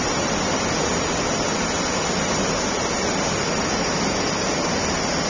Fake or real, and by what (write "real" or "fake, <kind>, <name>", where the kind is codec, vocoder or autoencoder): real